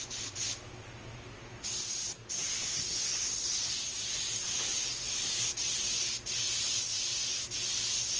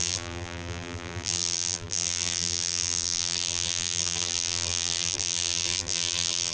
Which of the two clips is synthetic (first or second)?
second